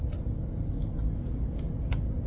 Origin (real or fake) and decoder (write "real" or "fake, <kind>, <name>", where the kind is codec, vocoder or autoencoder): real